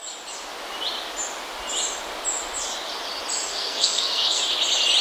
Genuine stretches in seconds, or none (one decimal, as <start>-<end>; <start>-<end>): 0.0-3.5; 4.4-5.0